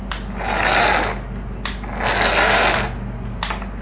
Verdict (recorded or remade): recorded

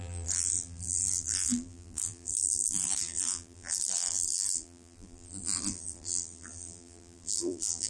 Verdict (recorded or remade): remade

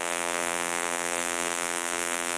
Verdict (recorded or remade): remade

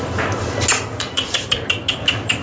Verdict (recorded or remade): recorded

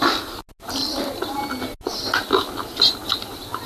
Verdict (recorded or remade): recorded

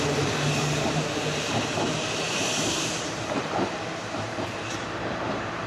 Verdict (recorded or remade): remade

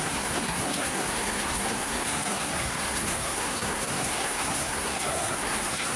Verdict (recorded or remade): remade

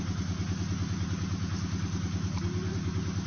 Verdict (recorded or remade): recorded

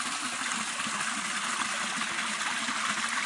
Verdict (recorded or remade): recorded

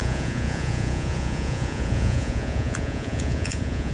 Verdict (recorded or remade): remade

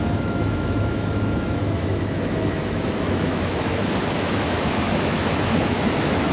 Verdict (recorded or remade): remade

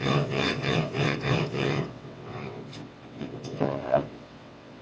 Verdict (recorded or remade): remade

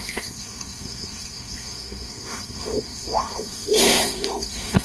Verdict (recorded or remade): remade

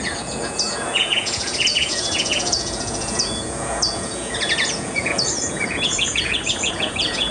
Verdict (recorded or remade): remade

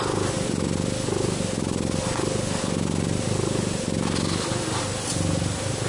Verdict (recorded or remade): recorded